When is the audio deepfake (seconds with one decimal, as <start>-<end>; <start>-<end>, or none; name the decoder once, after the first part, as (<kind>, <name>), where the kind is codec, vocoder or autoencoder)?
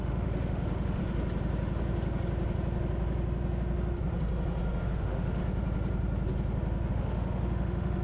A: 0.0-1.0 (autoencoder, DAC-VAE); 4.8-5.4; 6.9-8.0